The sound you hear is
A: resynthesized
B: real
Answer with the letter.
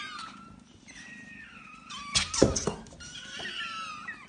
B